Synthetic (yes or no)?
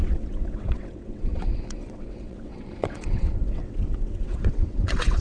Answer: yes